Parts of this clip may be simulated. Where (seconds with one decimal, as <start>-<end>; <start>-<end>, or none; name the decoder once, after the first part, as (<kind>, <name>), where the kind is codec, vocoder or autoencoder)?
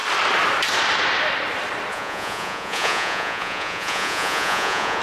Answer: 1.9-5.0 (vocoder, Vocos)